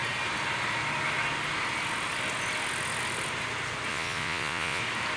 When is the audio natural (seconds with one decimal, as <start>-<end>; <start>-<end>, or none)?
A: 0.0-3.9; 4.8-5.2